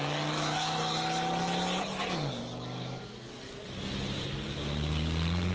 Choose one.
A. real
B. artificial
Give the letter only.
A